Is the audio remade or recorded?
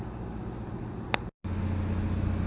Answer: recorded